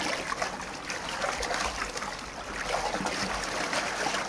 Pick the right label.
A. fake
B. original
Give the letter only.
B